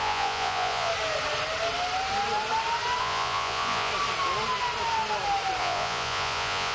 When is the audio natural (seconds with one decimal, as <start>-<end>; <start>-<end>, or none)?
0.9-3.0; 3.9-5.6